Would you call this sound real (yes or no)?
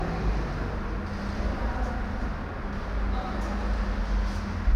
yes